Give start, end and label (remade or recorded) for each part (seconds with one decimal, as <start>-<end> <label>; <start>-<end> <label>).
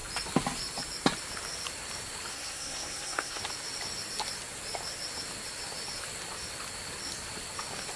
0.0-2.3 recorded; 2.3-3.4 remade; 3.4-8.0 recorded